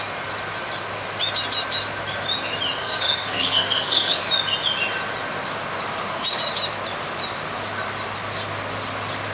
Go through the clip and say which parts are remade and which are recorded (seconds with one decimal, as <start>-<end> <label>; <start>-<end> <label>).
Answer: 0.0-2.8 recorded; 2.8-4.2 remade; 4.2-9.3 recorded